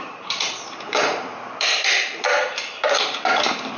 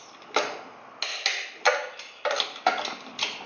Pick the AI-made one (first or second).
first